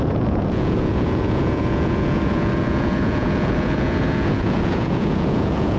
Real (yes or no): no